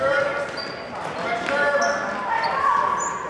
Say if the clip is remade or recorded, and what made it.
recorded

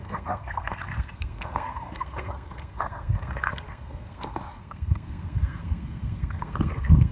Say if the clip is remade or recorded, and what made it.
remade, codec, SNAC